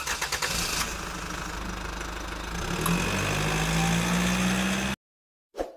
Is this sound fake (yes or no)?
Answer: no